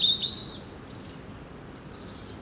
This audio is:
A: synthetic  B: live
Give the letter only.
B